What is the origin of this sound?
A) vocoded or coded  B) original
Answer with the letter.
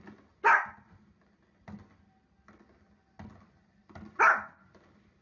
B